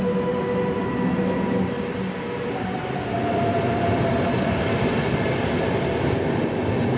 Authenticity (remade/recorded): recorded